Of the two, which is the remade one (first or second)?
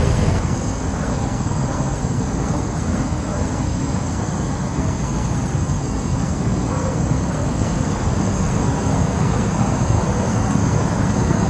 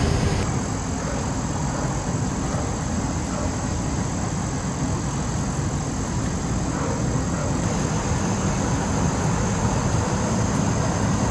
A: first